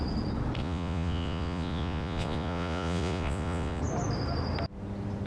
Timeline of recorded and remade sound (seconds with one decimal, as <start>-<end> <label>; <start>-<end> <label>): 0.0-0.6 recorded; 0.6-3.8 remade; 3.8-5.3 recorded